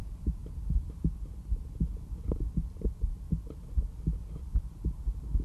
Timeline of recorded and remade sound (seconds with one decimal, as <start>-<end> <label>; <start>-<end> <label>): 0.0-5.4 recorded